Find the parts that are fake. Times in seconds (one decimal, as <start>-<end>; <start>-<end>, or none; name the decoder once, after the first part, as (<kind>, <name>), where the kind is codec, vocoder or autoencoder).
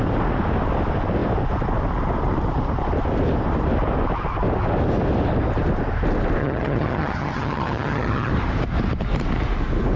6.4-8.3 (vocoder, HiFi-GAN)